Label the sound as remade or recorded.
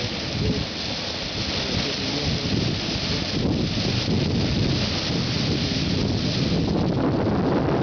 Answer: recorded